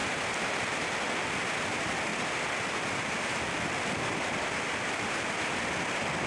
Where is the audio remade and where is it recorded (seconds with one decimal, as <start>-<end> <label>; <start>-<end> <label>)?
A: 0.0-2.1 recorded; 2.1-5.5 remade; 5.5-6.3 recorded